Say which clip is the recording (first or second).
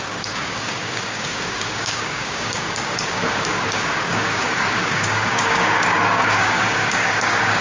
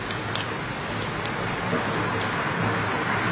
second